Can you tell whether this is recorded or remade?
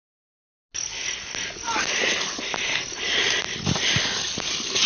recorded